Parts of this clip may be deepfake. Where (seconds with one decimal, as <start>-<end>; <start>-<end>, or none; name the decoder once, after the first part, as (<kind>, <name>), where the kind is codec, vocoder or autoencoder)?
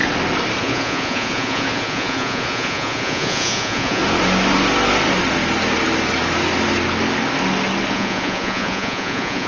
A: 0.6-4.0 (vocoder, Vocos); 7.9-9.5